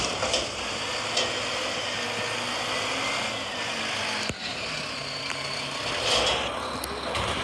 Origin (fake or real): real